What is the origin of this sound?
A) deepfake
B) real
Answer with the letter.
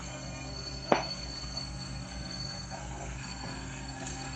A